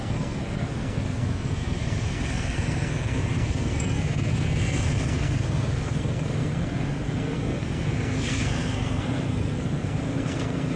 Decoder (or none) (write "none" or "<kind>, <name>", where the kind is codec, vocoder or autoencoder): codec, SNAC